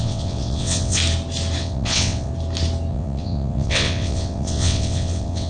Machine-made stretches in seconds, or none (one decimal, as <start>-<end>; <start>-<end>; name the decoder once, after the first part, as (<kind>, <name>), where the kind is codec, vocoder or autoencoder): 0.0-1.0 (vocoder, WaveNeXt); 1.6-2.3; 2.9-5.5